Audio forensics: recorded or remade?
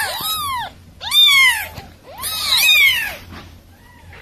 recorded